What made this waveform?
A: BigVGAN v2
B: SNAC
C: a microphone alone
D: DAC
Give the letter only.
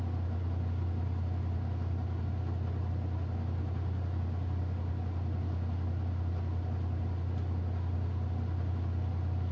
C